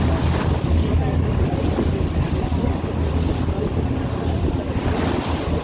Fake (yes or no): no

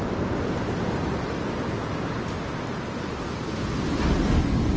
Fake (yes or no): no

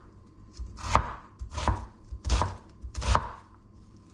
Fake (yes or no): yes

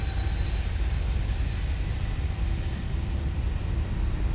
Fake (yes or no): no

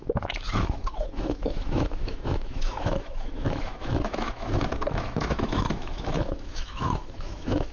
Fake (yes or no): yes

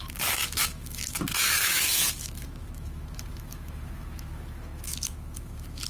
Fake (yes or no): yes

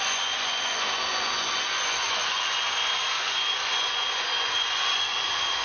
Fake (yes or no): yes